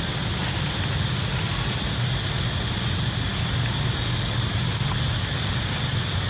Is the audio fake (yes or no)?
no